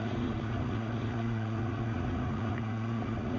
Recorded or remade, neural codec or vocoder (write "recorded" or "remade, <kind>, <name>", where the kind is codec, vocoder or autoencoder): remade, vocoder, Vocos